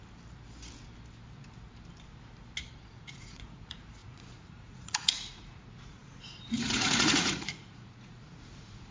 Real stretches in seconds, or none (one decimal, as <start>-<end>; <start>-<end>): 0.0-2.9